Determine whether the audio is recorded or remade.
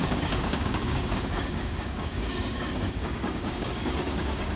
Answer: remade